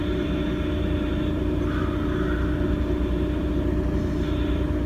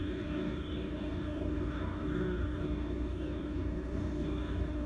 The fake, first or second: second